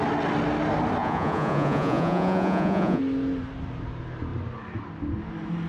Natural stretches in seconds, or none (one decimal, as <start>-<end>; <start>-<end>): 0.0-1.0; 3.0-5.7

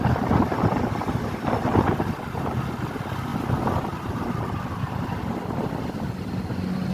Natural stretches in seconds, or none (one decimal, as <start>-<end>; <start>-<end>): 0.0-6.9

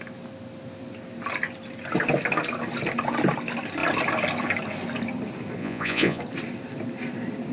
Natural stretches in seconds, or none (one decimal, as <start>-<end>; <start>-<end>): 0.0-5.6; 6.2-7.5